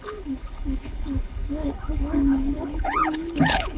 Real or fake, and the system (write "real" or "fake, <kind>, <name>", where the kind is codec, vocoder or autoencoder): fake, codec, HILCodec